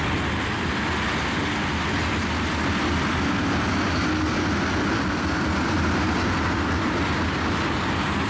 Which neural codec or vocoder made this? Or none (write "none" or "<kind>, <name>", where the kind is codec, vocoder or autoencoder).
none